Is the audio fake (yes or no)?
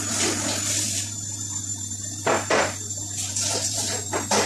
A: no